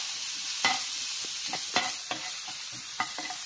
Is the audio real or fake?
real